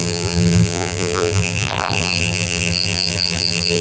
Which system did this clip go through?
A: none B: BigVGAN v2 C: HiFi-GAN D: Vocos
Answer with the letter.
B